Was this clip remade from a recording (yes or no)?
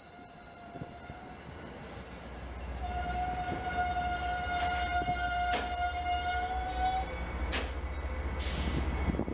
no